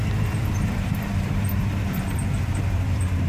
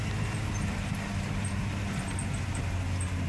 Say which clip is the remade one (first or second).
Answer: first